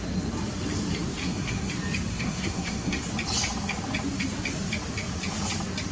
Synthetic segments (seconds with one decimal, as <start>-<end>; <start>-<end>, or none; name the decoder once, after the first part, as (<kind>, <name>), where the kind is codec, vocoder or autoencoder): 1.2-1.7 (codec, SNAC); 2.1-3.0

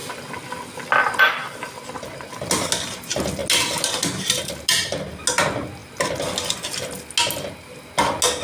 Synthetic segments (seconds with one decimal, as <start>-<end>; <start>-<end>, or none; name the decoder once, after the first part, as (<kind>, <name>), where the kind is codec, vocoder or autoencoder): none

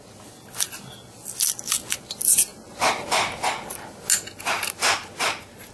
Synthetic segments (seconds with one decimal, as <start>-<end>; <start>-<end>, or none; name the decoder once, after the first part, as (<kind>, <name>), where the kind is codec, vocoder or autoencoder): none

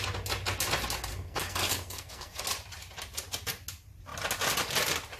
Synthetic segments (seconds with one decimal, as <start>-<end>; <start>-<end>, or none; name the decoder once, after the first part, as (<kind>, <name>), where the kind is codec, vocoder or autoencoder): 1.1-2.4 (codec, SNAC)

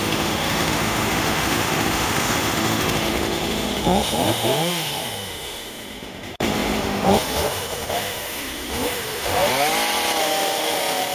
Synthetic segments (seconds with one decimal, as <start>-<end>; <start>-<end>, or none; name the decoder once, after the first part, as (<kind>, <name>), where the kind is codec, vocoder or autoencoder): 0.0-9.5 (autoencoder, DAC-VAE); 10.2-11.1

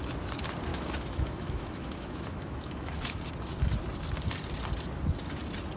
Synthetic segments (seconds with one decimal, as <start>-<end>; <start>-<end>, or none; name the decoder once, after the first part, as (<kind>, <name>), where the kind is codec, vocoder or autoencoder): 0.7-3.2 (autoencoder, DAC-VAE)

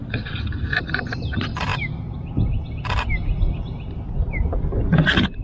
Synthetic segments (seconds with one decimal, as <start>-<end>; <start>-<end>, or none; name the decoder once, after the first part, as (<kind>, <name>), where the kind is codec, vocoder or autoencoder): none